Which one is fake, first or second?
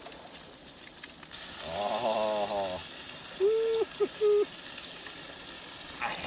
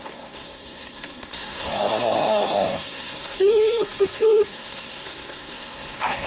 second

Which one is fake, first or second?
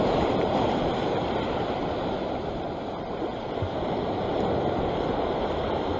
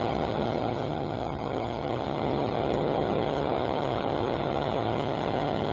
second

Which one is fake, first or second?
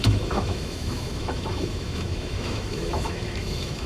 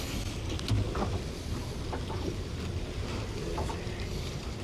first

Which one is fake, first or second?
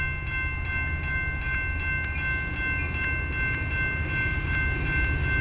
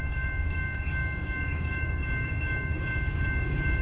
second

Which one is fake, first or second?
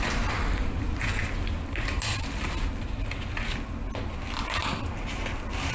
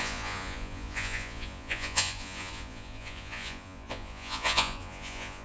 second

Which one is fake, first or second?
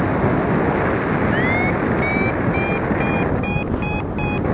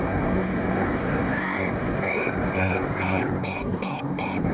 second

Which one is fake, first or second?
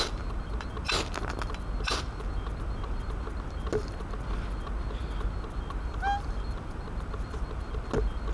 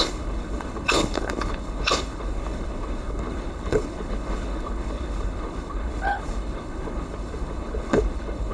second